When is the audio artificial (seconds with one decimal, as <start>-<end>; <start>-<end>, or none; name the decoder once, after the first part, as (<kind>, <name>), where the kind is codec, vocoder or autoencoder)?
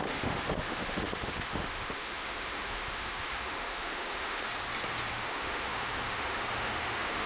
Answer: 0.0-4.5 (autoencoder, DAC-VAE); 5.1-7.3